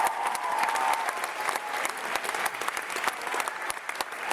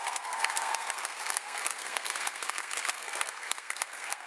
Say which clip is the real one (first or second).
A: first